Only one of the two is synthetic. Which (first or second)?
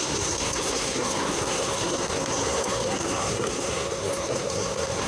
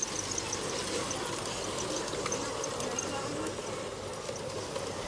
first